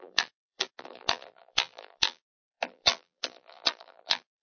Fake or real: fake